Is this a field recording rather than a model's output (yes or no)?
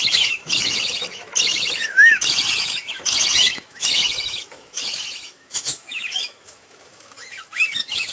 no